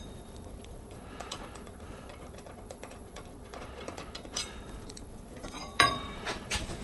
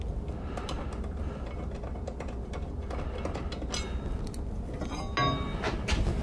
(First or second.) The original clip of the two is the second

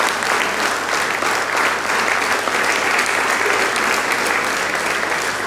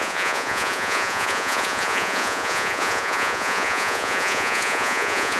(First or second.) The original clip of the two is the first